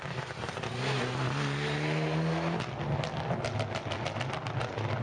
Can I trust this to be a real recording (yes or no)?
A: yes